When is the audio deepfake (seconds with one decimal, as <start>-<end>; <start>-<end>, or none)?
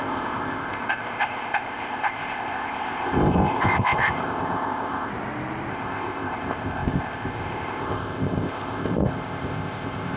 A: 0.0-5.1; 5.7-10.2